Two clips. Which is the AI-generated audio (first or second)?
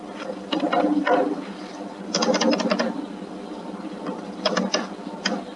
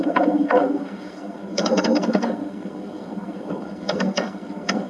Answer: second